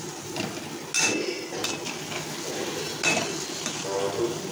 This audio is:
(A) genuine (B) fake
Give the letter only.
A